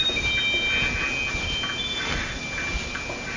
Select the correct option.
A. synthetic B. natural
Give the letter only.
B